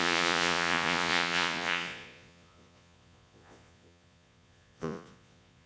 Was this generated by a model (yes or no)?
yes